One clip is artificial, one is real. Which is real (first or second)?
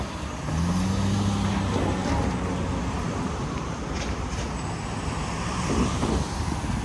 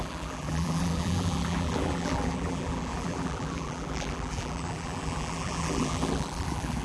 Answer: first